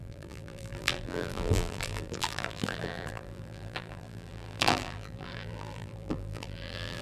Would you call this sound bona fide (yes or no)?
no